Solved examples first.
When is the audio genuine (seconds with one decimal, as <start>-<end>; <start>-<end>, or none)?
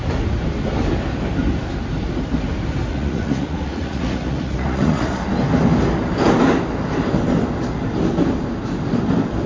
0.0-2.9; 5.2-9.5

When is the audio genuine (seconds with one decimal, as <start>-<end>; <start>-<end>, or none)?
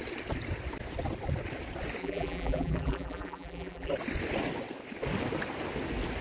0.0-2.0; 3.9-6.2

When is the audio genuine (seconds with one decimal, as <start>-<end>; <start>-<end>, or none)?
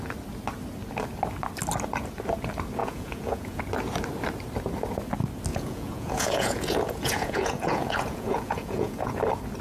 0.0-2.8; 3.6-5.5; 9.2-9.6